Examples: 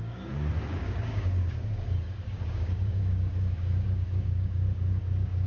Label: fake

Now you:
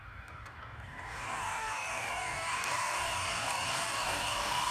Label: fake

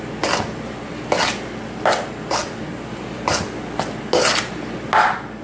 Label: real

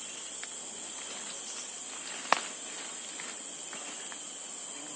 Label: real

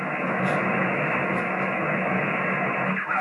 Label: fake